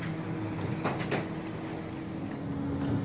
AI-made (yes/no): no